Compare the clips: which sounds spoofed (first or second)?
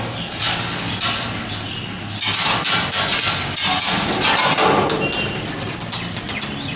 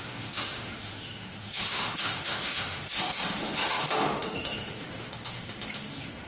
second